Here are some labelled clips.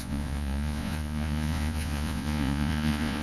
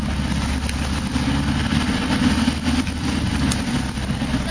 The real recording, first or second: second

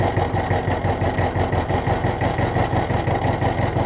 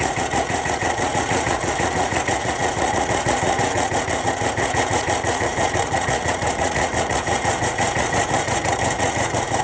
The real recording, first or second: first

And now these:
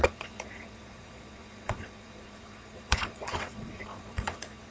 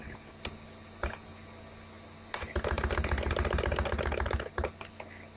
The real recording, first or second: second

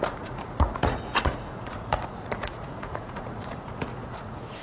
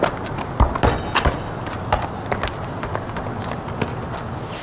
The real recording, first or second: second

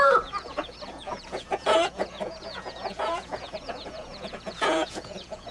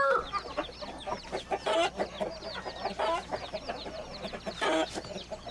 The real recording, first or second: second